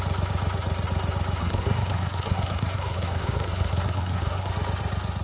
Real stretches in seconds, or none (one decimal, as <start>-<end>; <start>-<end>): 0.0-1.4; 4.5-5.2